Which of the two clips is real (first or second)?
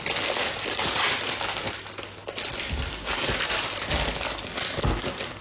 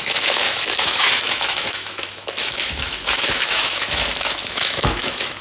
first